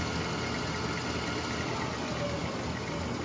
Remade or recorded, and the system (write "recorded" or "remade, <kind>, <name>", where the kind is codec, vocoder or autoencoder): recorded